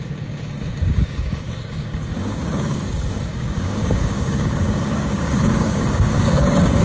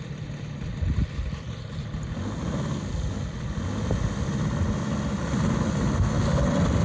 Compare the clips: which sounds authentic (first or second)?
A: second